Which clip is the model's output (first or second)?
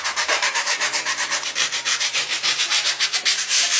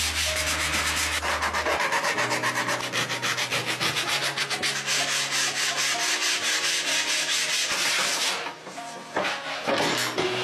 first